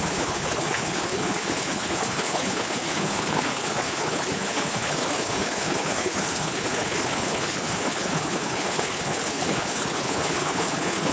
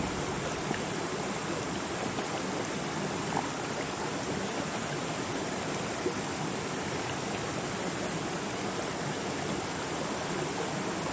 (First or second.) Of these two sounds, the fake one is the first